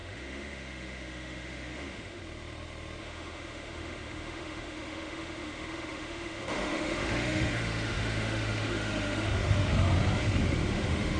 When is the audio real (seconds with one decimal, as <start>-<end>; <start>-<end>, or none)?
2.2-3.0; 9.7-10.4

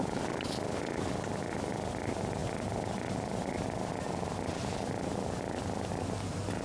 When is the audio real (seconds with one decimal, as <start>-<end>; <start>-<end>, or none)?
0.0-6.6